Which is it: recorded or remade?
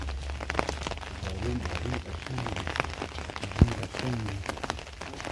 recorded